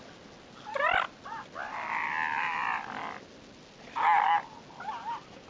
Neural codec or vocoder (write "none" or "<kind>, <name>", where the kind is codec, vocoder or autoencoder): none